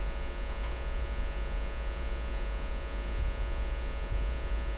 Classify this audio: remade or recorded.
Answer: remade